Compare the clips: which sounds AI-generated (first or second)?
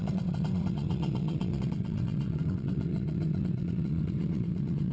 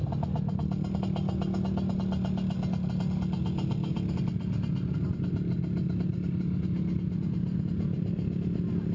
first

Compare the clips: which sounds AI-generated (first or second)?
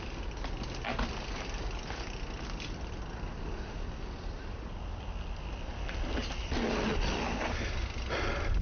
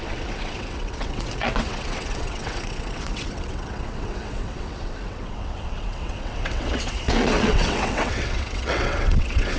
second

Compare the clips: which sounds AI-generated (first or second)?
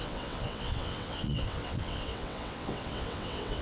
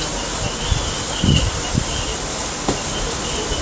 first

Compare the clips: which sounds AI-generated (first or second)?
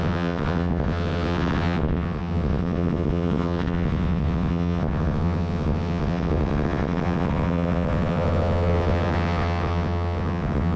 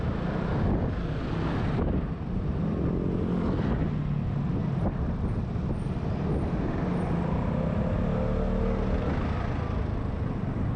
first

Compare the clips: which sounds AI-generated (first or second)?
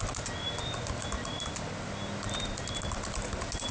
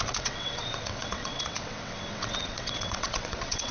second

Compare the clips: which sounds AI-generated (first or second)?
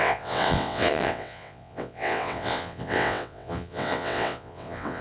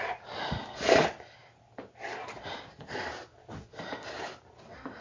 first